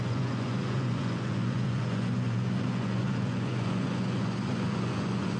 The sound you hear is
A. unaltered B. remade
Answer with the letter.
B